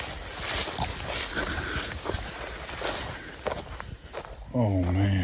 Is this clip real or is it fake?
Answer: real